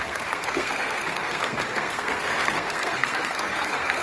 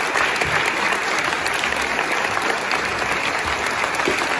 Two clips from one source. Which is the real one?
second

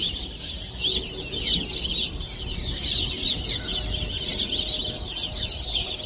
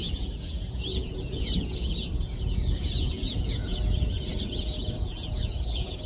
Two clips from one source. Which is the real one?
first